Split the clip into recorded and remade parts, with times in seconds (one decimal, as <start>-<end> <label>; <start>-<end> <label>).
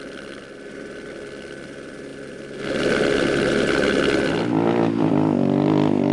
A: 0.0-6.1 recorded